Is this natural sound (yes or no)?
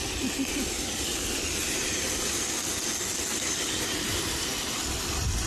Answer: yes